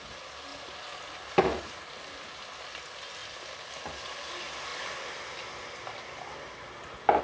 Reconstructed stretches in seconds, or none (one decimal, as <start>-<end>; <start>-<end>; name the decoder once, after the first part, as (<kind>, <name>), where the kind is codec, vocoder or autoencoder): none